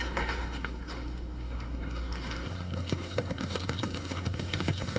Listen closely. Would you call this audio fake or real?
fake